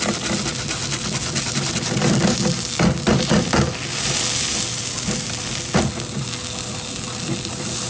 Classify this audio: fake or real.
real